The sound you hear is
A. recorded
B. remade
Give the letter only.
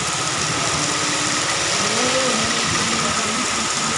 A